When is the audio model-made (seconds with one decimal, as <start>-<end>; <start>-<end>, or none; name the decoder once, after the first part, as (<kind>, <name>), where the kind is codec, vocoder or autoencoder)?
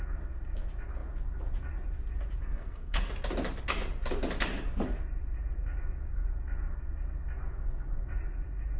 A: 2.4-3.1 (codec, SNAC)